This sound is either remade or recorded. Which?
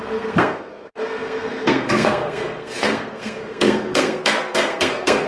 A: remade